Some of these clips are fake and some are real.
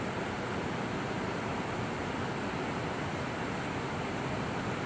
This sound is real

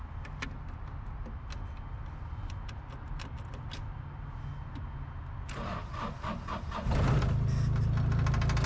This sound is real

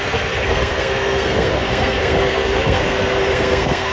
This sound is fake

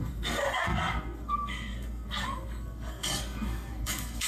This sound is fake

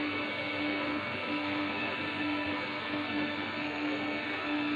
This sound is fake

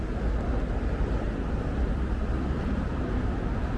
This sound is real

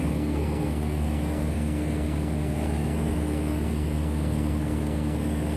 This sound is fake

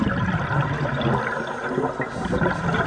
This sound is real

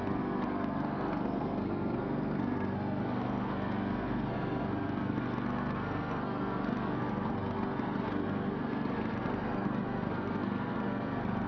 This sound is fake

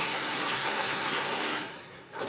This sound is fake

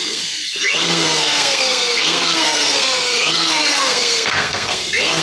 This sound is fake